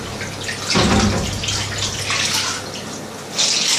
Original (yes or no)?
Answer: yes